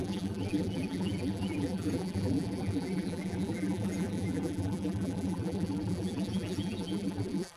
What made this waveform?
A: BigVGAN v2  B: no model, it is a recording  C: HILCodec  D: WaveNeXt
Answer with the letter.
A